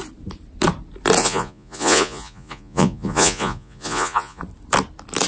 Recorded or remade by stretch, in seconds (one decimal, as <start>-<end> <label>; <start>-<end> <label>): 0.0-1.2 recorded; 1.2-4.4 remade; 4.4-5.3 recorded